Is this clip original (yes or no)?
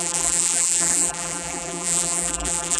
no